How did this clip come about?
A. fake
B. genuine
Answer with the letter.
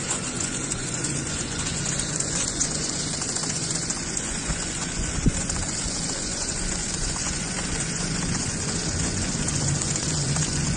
A